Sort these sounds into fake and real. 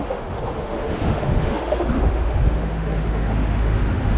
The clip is fake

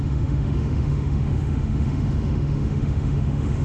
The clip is fake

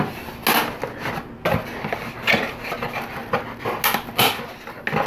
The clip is real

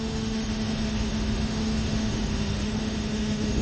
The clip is fake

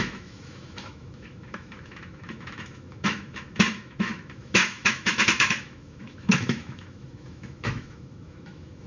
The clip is fake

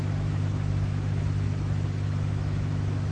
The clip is fake